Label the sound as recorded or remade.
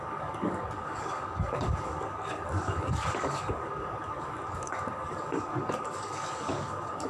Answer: remade